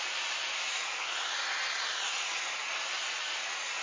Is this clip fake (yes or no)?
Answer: no